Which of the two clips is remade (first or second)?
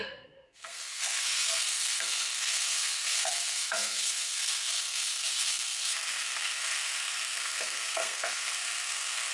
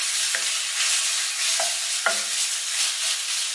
first